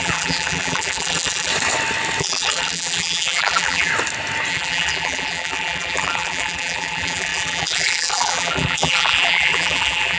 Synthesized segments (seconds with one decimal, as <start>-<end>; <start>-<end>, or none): 0.0-1.5; 2.2-3.9; 4.5-10.2